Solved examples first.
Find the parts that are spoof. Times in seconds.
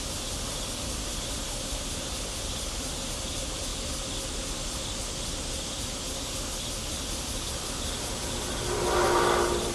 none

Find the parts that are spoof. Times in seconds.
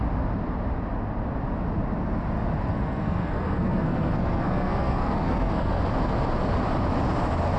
2.7-5.8 (codec, SNAC)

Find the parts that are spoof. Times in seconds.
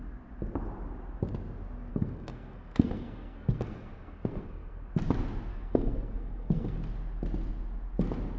1.9-4.9 (codec, SNAC); 5.5-6.8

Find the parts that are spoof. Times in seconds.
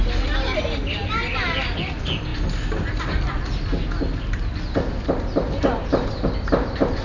none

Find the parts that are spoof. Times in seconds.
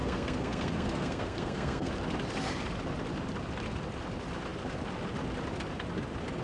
0.0-1.9 (codec, SNAC)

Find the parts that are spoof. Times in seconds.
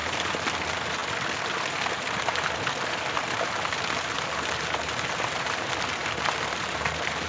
none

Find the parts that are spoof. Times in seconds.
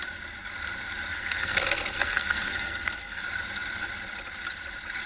1.1-3.2 (codec, SNAC)